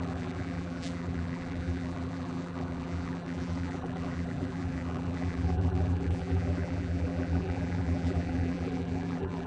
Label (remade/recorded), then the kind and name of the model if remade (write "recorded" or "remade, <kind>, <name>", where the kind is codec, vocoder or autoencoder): remade, vocoder, BigVGAN v2